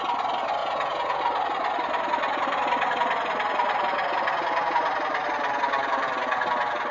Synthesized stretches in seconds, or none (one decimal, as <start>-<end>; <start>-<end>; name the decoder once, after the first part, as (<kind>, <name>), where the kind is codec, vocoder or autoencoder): 0.6-1.2 (vocoder, Vocos)